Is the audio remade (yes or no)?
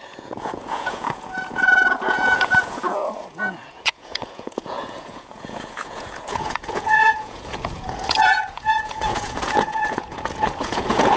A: yes